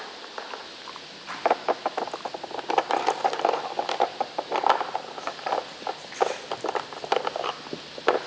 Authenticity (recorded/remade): recorded